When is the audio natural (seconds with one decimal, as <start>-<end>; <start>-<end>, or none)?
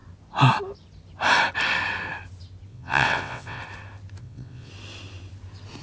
0.0-2.7; 3.6-4.2; 4.7-5.8